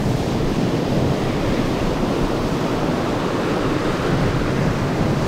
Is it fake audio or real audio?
fake